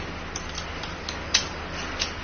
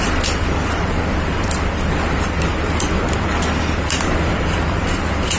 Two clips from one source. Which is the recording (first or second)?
first